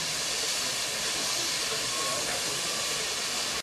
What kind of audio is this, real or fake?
fake